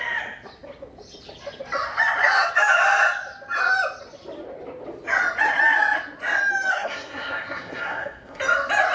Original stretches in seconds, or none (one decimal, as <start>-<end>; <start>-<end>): 0.0-6.7; 8.4-8.9